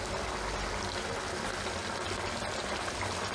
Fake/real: real